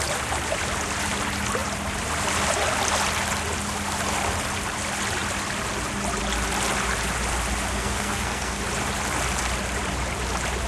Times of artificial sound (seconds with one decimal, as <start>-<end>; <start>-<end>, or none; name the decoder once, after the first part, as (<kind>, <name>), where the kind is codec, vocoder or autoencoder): 7.7-8.6 (codec, SNAC)